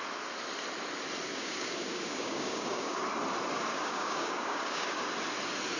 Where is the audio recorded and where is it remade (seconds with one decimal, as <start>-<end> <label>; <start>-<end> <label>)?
0.0-1.3 recorded; 1.3-3.0 remade; 3.0-3.7 recorded; 3.7-5.0 remade; 5.0-5.8 recorded